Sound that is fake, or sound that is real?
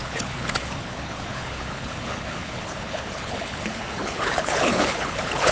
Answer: fake